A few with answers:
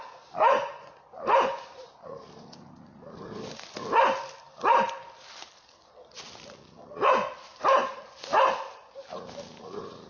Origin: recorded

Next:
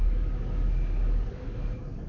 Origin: remade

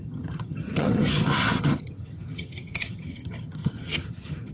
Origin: remade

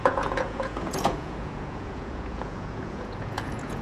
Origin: remade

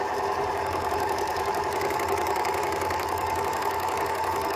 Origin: remade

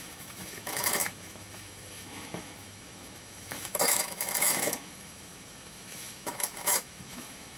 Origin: remade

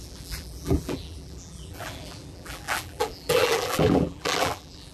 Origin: remade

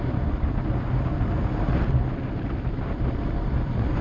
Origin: recorded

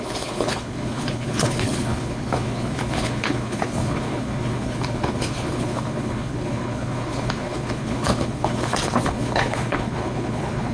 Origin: remade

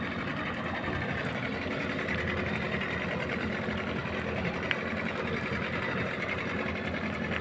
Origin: recorded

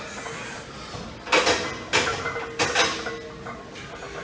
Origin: recorded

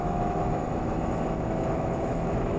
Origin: remade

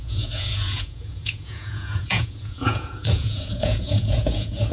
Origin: remade